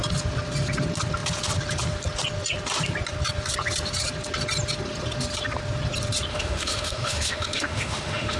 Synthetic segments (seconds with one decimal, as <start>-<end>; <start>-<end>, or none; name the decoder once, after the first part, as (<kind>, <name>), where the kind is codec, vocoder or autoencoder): 6.3-8.4 (autoencoder, DAC-VAE)